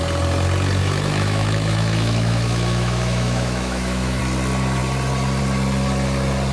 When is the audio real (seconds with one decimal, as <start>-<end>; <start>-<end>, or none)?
0.0-0.8; 4.2-6.5